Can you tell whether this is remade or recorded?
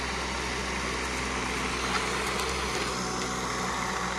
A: recorded